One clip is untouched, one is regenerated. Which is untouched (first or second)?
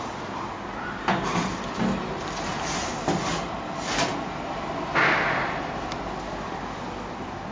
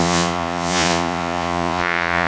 first